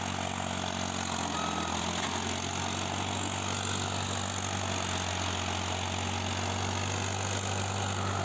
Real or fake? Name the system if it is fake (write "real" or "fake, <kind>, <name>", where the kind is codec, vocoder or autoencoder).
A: real